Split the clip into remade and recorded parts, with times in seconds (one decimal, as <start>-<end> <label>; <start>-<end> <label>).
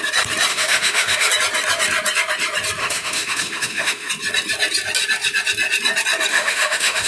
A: 0.0-0.5 recorded; 0.5-1.3 remade; 1.3-2.8 recorded; 2.8-4.1 remade; 4.1-6.3 recorded; 6.3-7.1 remade